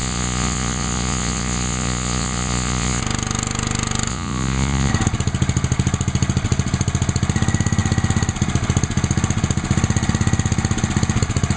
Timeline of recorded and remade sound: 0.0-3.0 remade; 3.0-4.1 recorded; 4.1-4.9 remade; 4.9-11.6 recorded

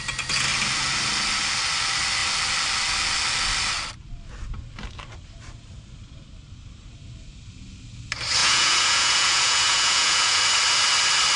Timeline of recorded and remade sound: 0.0-8.4 recorded; 8.4-10.4 remade; 10.4-11.4 recorded